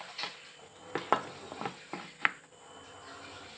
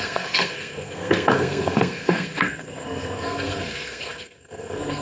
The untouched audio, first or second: first